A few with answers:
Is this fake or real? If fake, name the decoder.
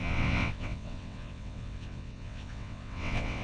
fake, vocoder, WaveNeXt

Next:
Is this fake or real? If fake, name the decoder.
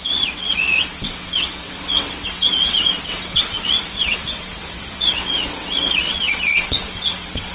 fake, vocoder, WaveNeXt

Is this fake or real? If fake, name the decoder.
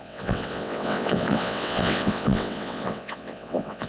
fake, vocoder, WaveNeXt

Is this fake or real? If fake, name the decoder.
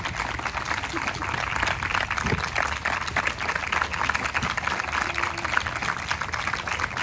real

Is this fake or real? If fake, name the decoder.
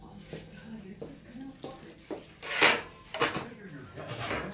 real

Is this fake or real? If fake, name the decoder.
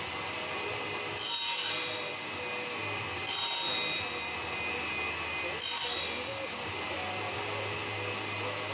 real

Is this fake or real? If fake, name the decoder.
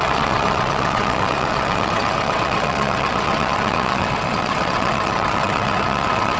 fake, vocoder, WaveNeXt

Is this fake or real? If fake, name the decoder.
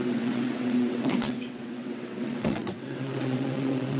fake, vocoder, WaveNeXt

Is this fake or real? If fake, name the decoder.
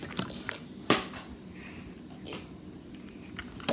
real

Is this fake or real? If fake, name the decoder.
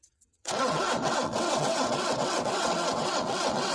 fake, vocoder, WaveNeXt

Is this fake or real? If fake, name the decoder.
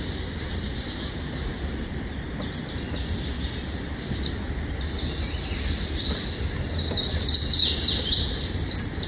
real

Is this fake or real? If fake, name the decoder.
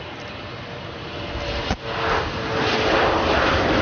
real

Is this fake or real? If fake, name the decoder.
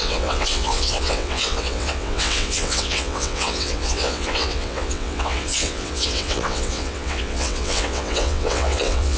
fake, vocoder, WaveNeXt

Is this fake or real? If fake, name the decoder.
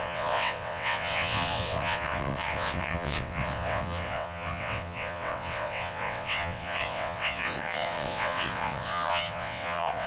fake, vocoder, WaveNeXt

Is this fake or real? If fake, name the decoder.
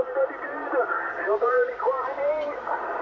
real